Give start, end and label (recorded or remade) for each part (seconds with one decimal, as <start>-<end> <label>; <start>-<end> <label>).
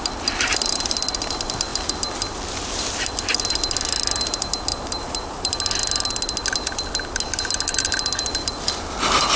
0.0-4.7 recorded; 4.7-5.5 remade; 5.5-9.4 recorded